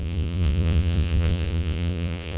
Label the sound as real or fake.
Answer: fake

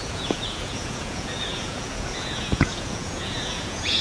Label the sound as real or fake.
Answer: fake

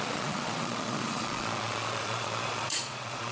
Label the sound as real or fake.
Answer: fake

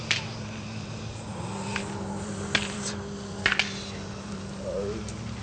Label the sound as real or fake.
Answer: real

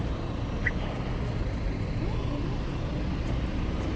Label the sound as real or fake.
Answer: real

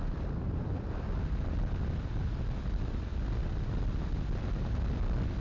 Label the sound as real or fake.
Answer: real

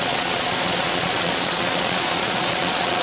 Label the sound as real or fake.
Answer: fake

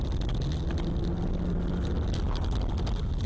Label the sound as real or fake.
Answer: real